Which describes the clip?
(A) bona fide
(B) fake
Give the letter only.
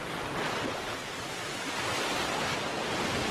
A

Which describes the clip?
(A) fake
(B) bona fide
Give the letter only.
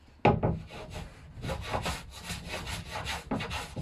B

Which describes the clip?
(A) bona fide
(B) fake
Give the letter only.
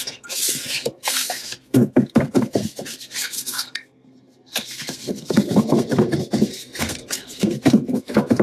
B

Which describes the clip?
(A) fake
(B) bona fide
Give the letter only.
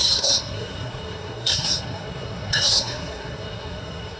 A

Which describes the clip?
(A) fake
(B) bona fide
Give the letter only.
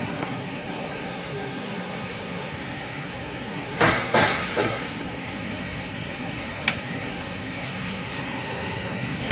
A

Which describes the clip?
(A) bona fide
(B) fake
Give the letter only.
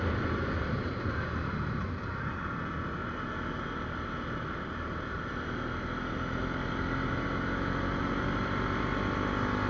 A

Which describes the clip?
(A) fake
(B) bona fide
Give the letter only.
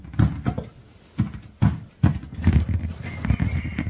B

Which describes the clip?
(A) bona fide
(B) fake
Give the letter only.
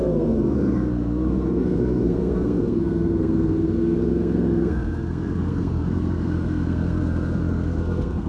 B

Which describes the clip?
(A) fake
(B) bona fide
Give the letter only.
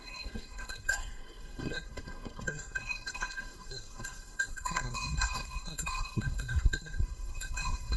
A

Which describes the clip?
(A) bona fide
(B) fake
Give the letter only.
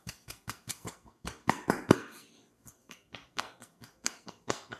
B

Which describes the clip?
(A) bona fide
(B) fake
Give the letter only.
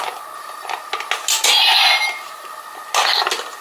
A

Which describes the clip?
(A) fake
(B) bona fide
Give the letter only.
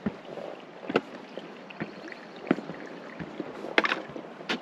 B